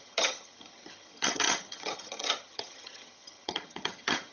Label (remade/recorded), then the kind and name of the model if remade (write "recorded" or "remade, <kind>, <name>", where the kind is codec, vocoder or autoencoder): remade, vocoder, HiFi-GAN